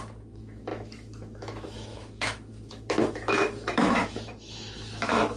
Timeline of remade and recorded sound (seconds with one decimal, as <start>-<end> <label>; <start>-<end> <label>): 0.0-5.4 remade